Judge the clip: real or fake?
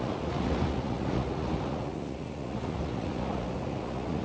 fake